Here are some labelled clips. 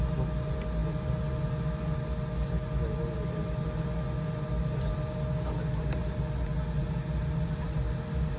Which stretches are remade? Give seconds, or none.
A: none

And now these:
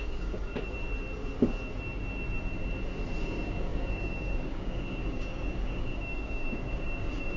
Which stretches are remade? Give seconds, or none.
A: 0.0-0.5 (codec, DAC); 3.2-7.4

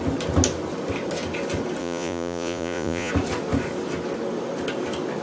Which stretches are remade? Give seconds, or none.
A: 1.8-3.1 (vocoder, Vocos)

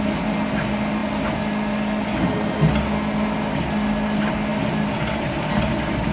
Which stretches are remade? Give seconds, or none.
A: none

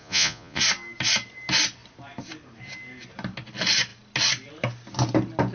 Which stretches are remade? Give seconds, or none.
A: 0.0-0.6 (vocoder, Vocos)